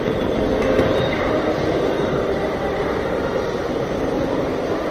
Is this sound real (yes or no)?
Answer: no